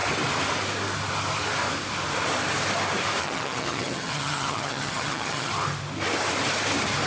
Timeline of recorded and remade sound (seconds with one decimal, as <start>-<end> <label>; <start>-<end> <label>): 0.0-3.2 recorded; 3.2-5.5 remade; 5.5-7.1 recorded